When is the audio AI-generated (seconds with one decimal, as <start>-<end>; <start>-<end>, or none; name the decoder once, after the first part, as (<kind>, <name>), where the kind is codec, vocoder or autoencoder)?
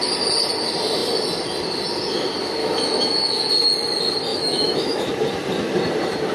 2.6-3.5 (autoencoder, DAC-VAE); 4.3-5.0